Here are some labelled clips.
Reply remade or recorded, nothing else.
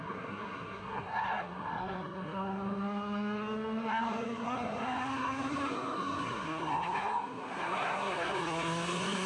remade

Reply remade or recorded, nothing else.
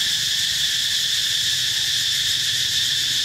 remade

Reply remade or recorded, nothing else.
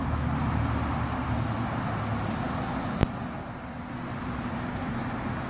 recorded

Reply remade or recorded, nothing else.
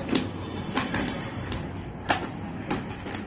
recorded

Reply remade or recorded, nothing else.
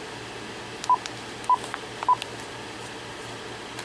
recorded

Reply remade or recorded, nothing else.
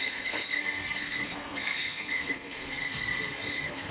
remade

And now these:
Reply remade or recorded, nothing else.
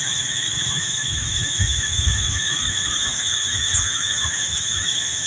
remade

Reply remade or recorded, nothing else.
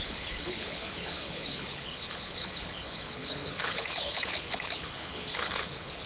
remade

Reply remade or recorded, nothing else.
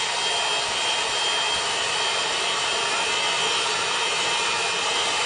recorded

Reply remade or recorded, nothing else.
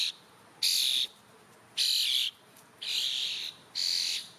recorded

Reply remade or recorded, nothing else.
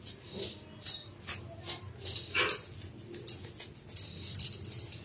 recorded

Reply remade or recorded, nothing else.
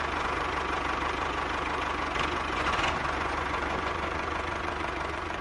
remade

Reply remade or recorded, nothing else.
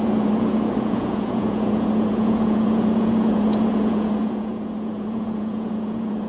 remade